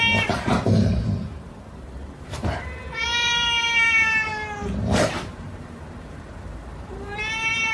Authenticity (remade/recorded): remade